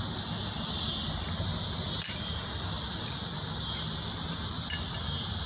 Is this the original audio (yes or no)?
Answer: yes